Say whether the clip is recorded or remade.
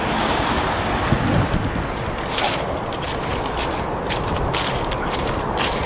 recorded